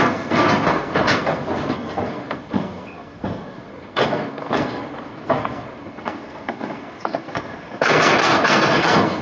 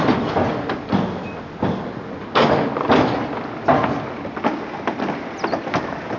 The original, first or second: second